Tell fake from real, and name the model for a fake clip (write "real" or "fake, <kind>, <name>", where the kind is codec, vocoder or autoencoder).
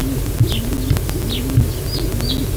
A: real